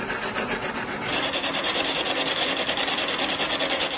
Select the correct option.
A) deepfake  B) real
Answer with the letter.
B